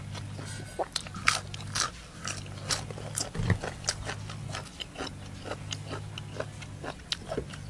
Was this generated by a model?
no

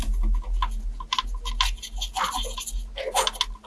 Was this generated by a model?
no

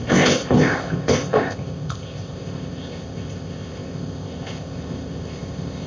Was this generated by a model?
yes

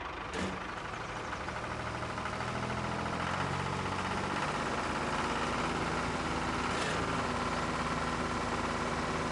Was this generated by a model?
no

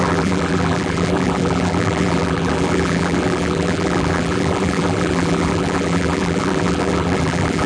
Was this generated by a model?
yes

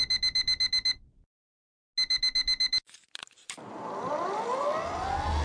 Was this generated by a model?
no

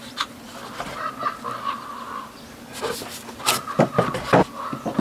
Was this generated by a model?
no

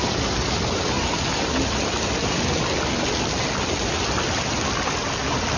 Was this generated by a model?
no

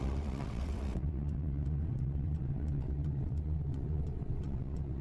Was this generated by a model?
yes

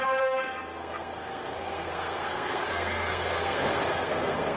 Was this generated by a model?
yes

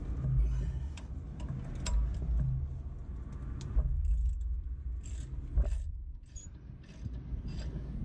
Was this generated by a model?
no